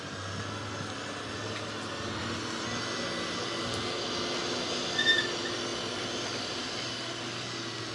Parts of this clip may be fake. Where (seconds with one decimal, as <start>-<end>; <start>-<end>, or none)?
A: none